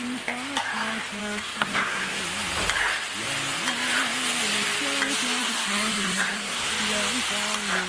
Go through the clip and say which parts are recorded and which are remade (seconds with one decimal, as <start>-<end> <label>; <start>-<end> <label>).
0.0-1.2 recorded; 1.2-2.2 remade; 2.2-5.4 recorded; 5.4-6.7 remade; 6.7-7.9 recorded